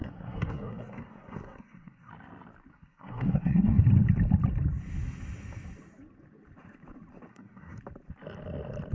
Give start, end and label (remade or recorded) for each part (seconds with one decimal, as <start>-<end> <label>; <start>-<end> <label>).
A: 0.0-2.1 remade; 2.1-2.7 recorded; 2.7-3.8 remade; 3.8-7.3 recorded; 7.3-7.8 remade; 7.8-8.9 recorded